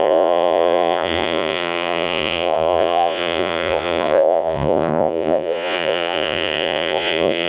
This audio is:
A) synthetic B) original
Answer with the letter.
A